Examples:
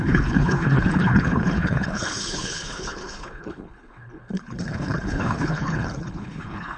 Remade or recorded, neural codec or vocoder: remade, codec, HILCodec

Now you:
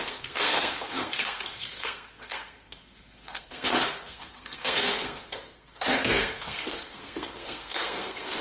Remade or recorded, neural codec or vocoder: remade, codec, SNAC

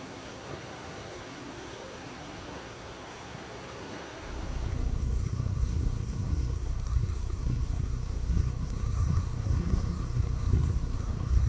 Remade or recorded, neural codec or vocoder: remade, codec, SNAC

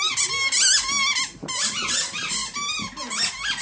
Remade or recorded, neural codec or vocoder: recorded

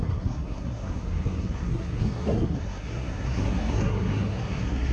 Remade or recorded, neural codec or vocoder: remade, codec, SNAC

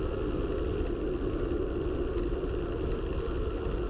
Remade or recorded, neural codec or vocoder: recorded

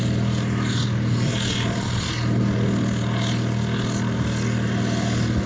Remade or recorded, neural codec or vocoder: recorded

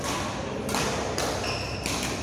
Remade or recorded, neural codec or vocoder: recorded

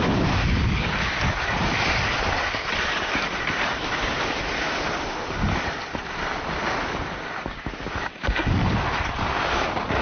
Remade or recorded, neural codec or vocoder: recorded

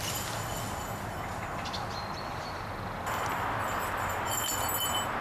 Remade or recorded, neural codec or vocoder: recorded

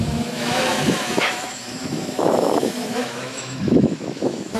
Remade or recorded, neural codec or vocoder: remade, autoencoder, DAC-VAE